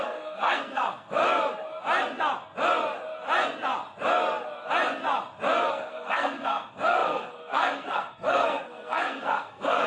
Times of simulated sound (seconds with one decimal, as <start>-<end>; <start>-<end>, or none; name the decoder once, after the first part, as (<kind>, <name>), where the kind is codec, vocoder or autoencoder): 0.0-1.2 (codec, SNAC); 5.7-9.9